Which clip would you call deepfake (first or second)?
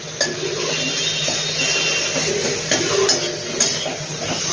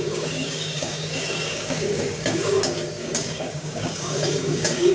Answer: second